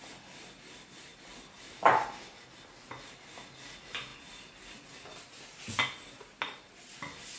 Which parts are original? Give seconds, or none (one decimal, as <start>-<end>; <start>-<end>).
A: 0.0-7.4